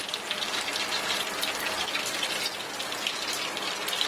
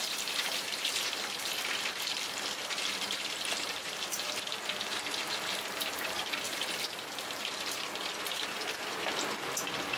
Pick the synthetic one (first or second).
second